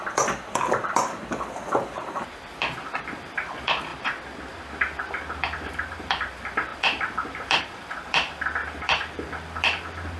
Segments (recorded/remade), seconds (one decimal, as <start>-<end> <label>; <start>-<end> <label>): 0.0-3.9 remade; 3.9-4.7 recorded; 4.7-10.2 remade